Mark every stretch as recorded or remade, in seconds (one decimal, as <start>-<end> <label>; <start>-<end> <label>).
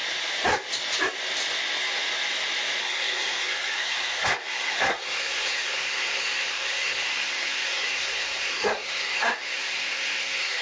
0.0-2.8 recorded; 2.8-10.6 remade